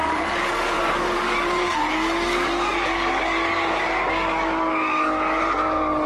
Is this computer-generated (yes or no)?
yes